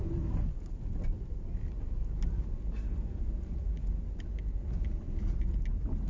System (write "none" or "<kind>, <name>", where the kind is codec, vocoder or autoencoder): none